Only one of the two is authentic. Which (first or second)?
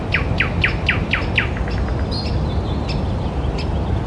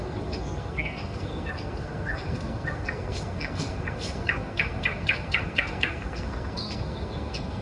first